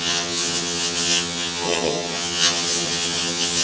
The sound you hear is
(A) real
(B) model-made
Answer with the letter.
B